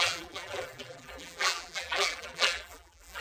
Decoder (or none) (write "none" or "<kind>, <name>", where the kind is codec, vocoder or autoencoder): vocoder, BigVGAN v2